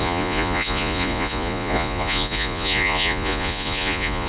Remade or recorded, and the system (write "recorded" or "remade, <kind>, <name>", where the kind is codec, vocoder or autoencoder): remade, vocoder, Vocos